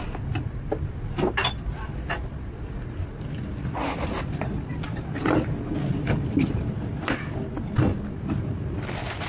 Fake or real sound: real